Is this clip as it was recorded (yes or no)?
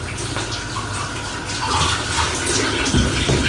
yes